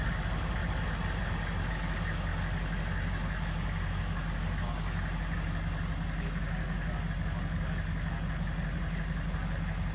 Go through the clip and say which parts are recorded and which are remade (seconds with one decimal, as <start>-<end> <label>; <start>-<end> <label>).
0.0-9.9 recorded